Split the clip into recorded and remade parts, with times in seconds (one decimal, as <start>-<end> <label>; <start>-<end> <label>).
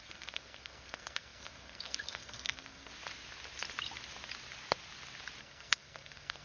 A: 0.0-2.9 remade; 2.9-5.4 recorded; 5.4-6.4 remade